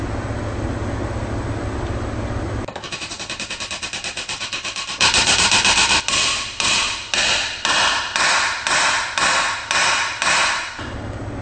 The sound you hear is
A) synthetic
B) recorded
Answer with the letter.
B